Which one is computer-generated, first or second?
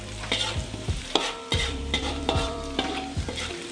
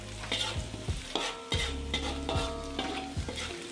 first